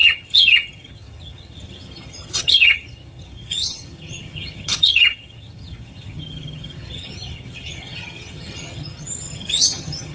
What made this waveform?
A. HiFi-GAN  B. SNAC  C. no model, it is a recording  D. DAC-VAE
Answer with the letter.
A